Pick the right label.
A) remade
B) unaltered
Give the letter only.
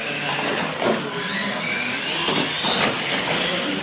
B